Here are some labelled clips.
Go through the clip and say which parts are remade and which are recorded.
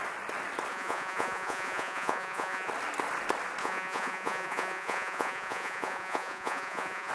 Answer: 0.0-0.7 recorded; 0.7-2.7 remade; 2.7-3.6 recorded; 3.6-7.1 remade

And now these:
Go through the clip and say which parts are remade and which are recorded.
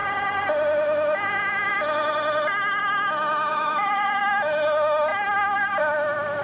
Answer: 0.0-3.5 recorded; 3.5-4.2 remade; 4.2-6.4 recorded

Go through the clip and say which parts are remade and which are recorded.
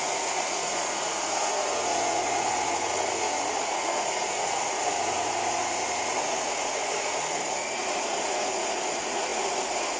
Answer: 0.0-10.0 remade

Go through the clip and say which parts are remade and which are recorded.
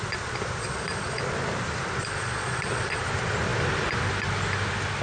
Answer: 0.0-0.6 recorded; 0.6-1.2 remade; 1.2-2.0 recorded; 2.0-3.0 remade; 3.0-5.0 recorded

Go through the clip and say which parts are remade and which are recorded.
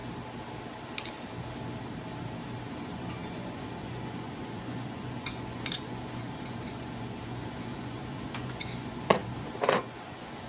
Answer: 0.0-2.6 recorded; 2.6-10.5 remade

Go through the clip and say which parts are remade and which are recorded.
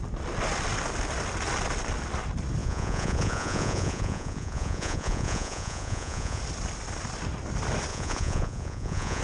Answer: 0.0-2.6 recorded; 2.6-6.4 remade; 6.4-7.9 recorded; 7.9-9.2 remade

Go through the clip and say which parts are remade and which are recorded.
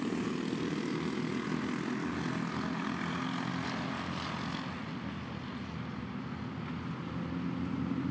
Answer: 0.0-8.1 recorded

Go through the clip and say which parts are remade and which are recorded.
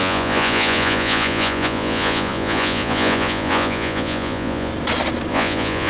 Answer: 0.0-4.7 remade; 4.7-5.3 recorded; 5.3-5.9 remade